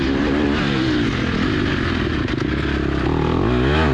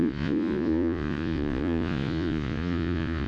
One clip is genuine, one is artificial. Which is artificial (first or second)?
second